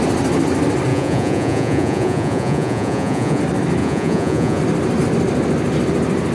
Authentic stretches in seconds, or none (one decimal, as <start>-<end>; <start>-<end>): 0.0-0.9; 3.4-3.8; 4.6-6.3